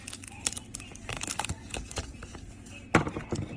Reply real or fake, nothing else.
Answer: fake